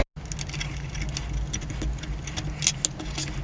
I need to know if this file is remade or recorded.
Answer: recorded